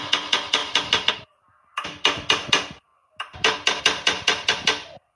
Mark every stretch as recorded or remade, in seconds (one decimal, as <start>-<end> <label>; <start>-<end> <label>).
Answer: 0.0-5.2 recorded